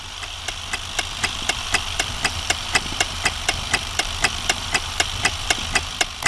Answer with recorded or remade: remade